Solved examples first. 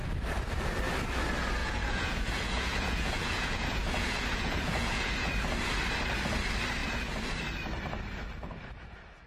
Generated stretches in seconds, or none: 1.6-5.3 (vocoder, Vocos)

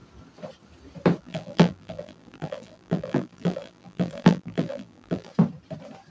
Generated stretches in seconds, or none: 1.2-5.3 (vocoder, BigVGAN v2)